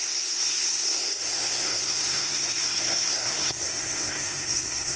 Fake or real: fake